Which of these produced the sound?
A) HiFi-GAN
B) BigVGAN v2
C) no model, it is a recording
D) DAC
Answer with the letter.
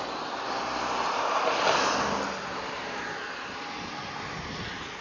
C